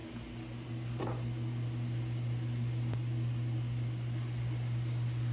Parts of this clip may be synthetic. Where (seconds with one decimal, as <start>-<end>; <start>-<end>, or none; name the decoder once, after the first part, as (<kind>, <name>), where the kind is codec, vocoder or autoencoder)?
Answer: none